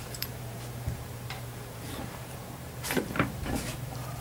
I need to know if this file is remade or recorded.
remade